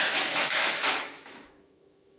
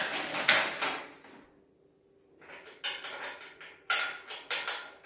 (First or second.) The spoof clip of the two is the first